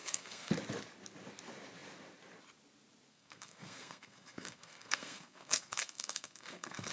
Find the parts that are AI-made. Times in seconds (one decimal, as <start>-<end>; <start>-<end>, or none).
0.0-0.5; 3.1-6.9